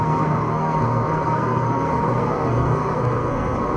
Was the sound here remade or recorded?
remade